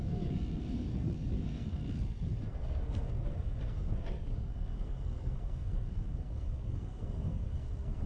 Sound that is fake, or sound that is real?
fake